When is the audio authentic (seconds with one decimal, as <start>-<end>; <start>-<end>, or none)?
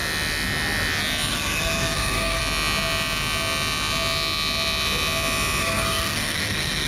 0.0-1.3; 2.4-5.6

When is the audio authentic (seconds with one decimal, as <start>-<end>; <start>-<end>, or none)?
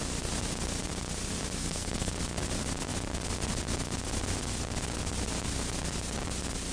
0.0-1.6; 2.1-6.7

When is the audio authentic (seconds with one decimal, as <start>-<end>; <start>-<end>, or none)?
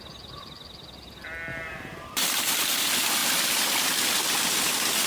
0.0-1.5; 2.2-3.2; 3.7-5.1